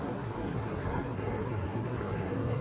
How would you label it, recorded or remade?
remade